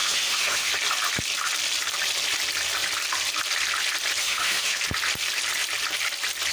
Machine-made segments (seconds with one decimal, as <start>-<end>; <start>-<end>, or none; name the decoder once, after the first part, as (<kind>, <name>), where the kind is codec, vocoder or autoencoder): 0.0-0.7 (autoencoder, DAC-VAE); 4.2-4.8

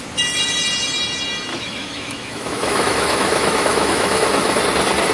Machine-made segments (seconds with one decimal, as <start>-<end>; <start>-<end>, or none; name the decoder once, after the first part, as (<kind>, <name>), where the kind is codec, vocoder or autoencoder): 1.5-4.6 (autoencoder, DAC-VAE)

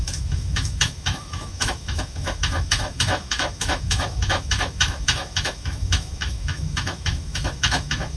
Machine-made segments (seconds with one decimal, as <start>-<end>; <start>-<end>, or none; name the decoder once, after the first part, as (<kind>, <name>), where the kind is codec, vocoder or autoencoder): 0.0-8.2 (autoencoder, DAC-VAE)